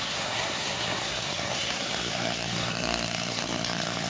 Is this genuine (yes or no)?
no